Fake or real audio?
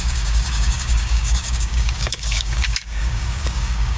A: fake